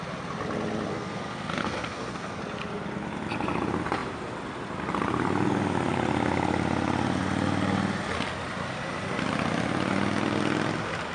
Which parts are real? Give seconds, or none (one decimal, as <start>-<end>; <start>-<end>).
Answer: 0.0-0.9; 2.4-11.1